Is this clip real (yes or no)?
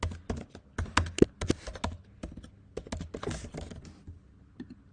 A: yes